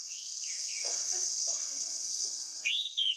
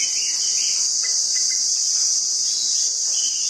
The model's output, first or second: first